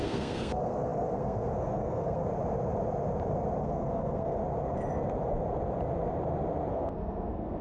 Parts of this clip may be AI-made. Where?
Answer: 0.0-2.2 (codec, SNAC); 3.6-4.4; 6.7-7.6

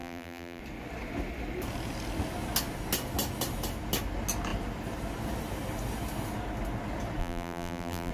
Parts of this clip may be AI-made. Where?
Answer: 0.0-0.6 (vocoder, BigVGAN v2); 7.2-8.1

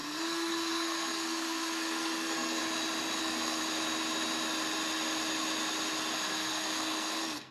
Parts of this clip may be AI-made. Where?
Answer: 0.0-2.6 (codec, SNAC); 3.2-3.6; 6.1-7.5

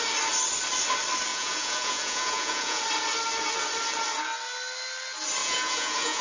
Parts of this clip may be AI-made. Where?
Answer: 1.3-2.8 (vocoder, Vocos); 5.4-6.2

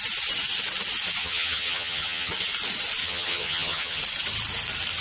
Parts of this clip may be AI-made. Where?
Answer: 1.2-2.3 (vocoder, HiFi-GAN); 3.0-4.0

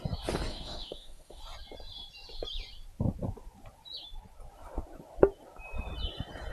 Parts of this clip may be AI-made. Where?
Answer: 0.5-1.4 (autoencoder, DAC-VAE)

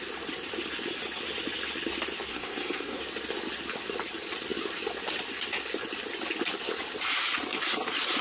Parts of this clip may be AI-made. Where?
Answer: 2.3-3.0 (codec, SNAC)